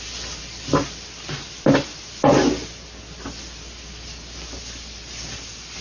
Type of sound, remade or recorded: recorded